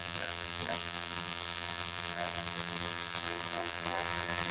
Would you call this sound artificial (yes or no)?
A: yes